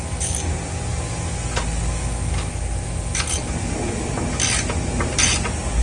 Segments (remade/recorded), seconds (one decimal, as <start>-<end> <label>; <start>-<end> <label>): 0.0-5.8 recorded